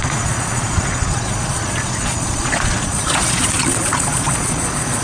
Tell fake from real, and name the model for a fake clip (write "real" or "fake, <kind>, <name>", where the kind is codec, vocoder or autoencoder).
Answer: fake, vocoder, Vocos